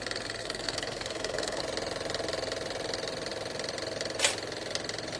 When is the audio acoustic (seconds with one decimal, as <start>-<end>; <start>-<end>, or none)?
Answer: 0.0-0.4; 1.6-5.2